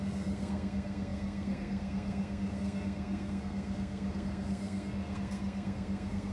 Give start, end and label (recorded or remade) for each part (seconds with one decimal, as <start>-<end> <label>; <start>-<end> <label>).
0.0-6.3 remade